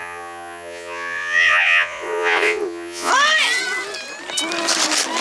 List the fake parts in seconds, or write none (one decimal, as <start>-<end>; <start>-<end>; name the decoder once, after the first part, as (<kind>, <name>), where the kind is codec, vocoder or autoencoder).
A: 0.0-3.1 (vocoder, Vocos)